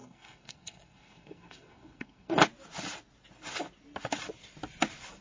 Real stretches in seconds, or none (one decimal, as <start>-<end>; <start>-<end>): 2.4-5.2